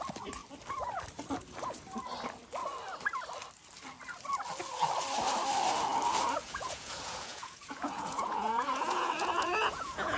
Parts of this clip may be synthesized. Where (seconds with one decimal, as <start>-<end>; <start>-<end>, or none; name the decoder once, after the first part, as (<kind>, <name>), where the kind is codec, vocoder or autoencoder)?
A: 6.4-10.2 (vocoder, Vocos)